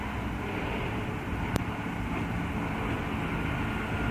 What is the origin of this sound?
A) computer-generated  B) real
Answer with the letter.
B